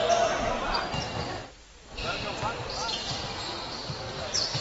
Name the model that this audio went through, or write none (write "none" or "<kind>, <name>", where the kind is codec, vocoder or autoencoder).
none